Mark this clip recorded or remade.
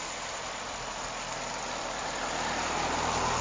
recorded